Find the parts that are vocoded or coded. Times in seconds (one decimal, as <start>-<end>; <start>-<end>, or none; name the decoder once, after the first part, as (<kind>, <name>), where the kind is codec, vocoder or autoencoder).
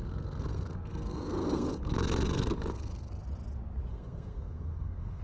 0.0-3.1 (codec, SNAC); 3.9-5.2